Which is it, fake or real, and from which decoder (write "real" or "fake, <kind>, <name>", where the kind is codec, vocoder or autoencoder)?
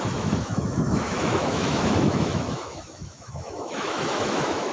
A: fake, autoencoder, DAC-VAE